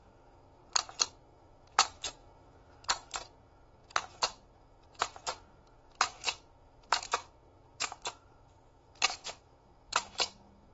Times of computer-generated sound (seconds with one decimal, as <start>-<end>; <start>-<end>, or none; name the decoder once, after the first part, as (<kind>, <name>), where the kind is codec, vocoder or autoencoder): 0.0-0.6 (autoencoder, DAC-VAE); 1.1-10.7